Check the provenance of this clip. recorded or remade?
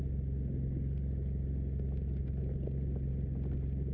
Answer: recorded